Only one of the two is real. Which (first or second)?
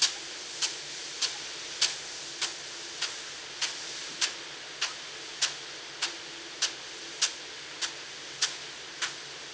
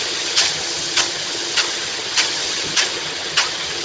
first